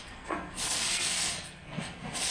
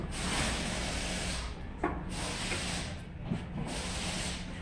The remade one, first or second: first